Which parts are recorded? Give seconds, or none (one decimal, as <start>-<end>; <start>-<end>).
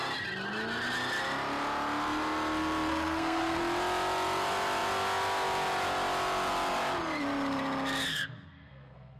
0.0-2.9; 3.6-8.1